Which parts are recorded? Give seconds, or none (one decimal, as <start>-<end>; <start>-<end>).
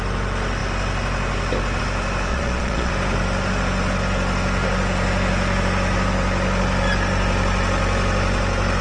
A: 0.0-2.3; 2.9-8.8